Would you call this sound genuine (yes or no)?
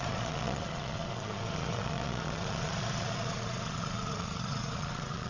no